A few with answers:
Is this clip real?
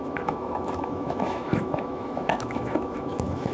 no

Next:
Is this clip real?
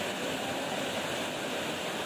yes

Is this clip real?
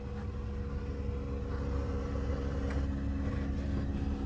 yes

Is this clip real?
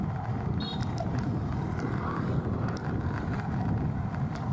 yes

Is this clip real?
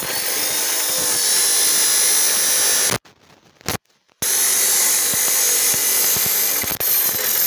yes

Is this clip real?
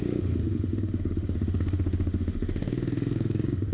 no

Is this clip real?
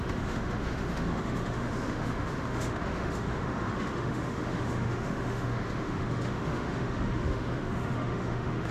no